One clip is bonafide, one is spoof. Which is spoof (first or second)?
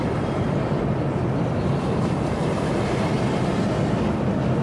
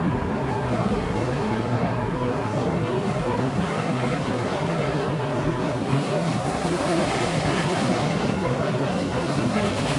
second